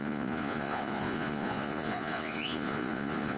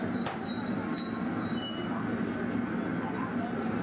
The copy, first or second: first